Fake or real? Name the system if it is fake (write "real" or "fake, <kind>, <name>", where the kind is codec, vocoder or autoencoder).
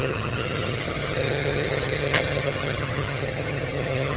fake, vocoder, HiFi-GAN